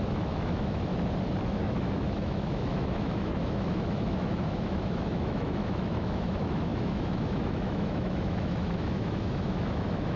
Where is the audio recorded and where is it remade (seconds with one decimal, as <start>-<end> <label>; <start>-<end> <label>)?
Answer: 0.0-0.9 remade; 0.9-1.4 recorded; 1.4-10.2 remade

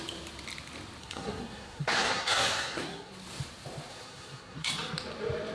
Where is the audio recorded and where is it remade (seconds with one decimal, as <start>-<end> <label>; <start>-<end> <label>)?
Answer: 0.0-1.0 recorded; 1.0-3.1 remade; 3.1-3.9 recorded; 3.9-4.7 remade; 4.7-5.5 recorded

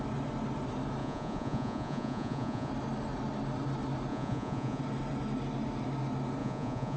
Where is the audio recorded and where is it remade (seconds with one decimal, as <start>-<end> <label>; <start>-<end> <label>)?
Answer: 0.0-1.0 recorded; 1.0-2.7 remade; 2.7-4.1 recorded; 4.1-4.8 remade; 4.8-6.4 recorded; 6.4-7.0 remade

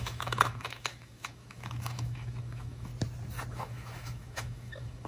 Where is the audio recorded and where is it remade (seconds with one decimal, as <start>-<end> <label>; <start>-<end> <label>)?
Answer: 0.0-2.9 remade; 2.9-3.5 recorded; 3.5-5.1 remade

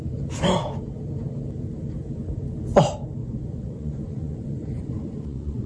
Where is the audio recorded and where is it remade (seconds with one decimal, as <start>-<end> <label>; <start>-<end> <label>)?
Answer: 0.0-3.2 recorded; 3.2-5.7 remade

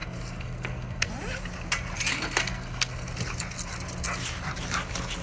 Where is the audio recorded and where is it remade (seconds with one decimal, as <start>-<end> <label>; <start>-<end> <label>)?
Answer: 0.0-1.1 remade; 1.1-2.1 recorded; 2.1-3.1 remade; 3.1-5.2 recorded